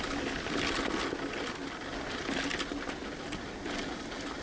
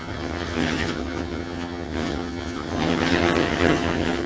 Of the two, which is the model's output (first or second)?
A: second